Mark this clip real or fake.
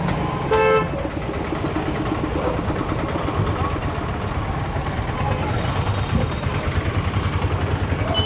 real